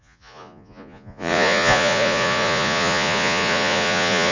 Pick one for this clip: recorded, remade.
remade